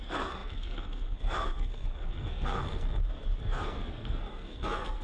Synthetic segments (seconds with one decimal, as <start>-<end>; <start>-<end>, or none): 0.0-5.0